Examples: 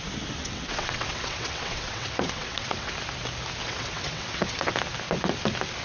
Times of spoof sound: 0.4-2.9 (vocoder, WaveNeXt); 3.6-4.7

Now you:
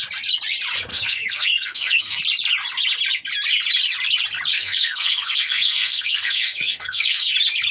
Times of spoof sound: 0.9-2.2 (codec, SNAC); 4.5-7.3

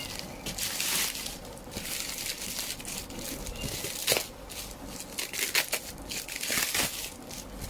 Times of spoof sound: none

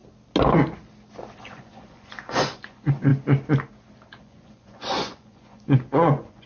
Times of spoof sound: 1.4-3.1 (vocoder, Vocos); 4.2-6.5

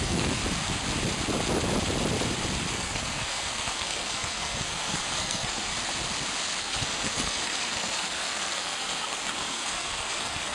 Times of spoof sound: 0.0-0.4 (codec, SNAC); 2.7-5.7; 6.6-10.5